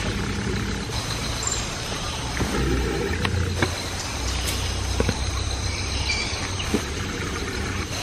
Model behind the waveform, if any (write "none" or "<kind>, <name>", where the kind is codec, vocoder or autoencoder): none